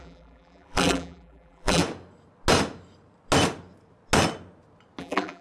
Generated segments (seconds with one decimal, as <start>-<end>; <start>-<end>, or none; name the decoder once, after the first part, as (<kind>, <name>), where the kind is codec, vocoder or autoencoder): 0.0-1.8 (vocoder, BigVGAN v2); 5.0-5.4